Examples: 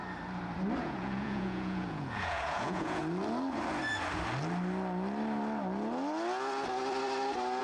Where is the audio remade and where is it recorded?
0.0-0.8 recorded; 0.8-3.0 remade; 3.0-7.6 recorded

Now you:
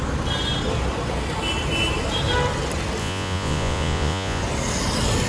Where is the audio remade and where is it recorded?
0.0-3.0 recorded; 3.0-4.4 remade; 4.4-5.3 recorded

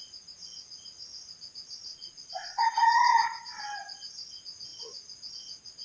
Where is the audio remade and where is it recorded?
0.0-1.9 recorded; 1.9-2.8 remade; 2.8-5.8 recorded

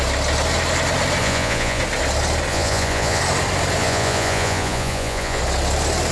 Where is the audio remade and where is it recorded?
0.0-1.2 recorded; 1.2-1.8 remade; 1.8-2.5 recorded; 2.5-3.2 remade; 3.2-3.8 recorded; 3.8-5.4 remade; 5.4-6.1 recorded

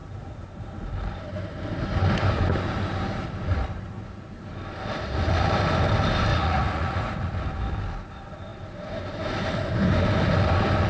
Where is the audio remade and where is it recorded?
0.0-6.3 recorded; 6.3-7.3 remade; 7.3-10.9 recorded

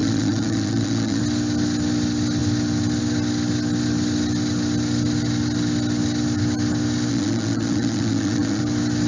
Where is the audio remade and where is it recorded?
0.0-1.2 remade; 1.2-7.1 recorded; 7.1-8.6 remade; 8.6-9.1 recorded

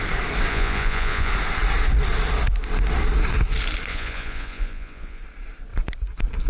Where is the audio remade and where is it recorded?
0.0-0.5 recorded; 0.5-1.3 remade; 1.3-3.9 recorded; 3.9-5.2 remade; 5.2-6.5 recorded